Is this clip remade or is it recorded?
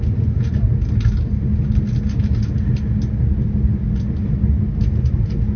recorded